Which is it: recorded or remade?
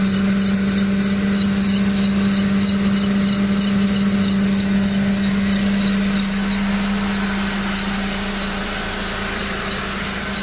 recorded